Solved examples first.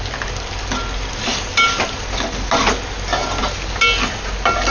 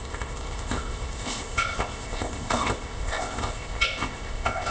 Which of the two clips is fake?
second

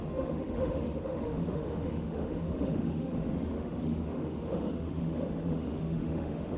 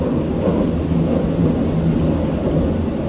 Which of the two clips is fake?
first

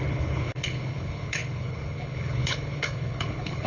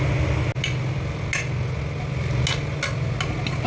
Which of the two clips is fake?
first